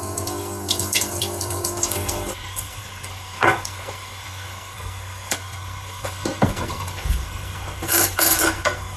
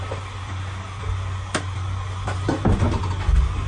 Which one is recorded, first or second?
second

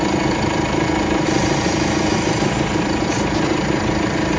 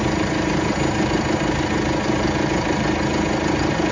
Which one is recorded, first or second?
second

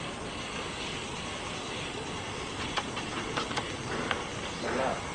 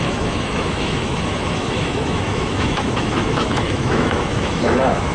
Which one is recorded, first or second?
first